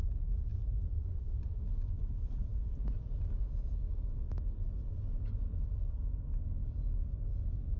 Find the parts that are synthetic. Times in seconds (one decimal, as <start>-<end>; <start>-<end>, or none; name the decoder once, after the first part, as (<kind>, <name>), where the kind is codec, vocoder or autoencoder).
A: 0.5-1.6 (vocoder, BigVGAN v2); 6.6-7.2